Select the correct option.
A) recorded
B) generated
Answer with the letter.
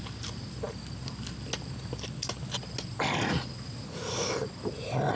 A